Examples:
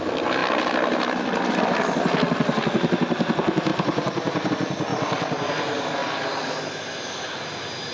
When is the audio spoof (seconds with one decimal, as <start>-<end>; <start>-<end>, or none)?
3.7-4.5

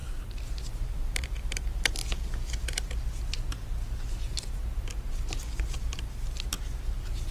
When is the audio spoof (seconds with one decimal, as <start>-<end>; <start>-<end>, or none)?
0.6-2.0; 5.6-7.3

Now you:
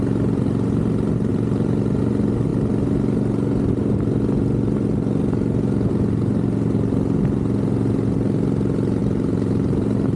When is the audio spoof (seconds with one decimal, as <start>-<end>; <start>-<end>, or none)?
1.3-2.0; 9.0-10.2